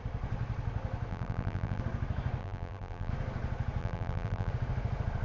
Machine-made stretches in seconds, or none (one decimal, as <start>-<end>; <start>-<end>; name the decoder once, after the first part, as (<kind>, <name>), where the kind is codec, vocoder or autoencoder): 1.1-1.8 (vocoder, BigVGAN v2); 2.4-3.1; 3.8-4.5